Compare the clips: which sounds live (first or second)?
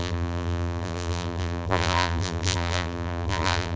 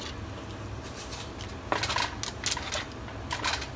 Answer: second